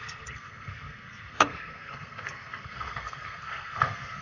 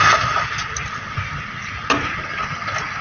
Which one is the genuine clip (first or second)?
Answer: second